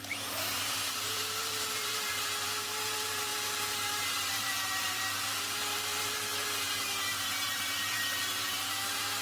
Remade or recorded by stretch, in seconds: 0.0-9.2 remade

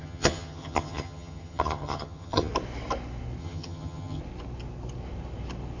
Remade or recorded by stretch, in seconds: 0.0-2.5 remade; 2.5-3.4 recorded; 3.4-4.2 remade; 4.2-5.8 recorded

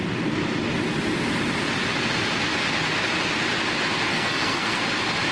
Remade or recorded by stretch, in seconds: 0.0-4.1 recorded; 4.1-4.8 remade; 4.8-5.3 recorded

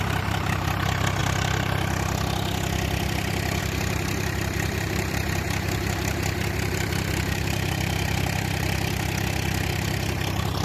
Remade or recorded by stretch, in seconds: 0.0-1.2 remade; 1.2-3.6 recorded; 3.6-10.6 remade

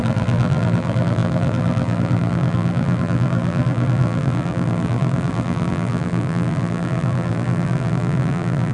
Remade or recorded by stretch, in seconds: 0.0-8.7 remade